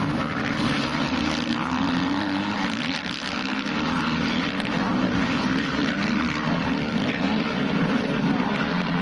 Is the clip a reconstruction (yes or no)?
no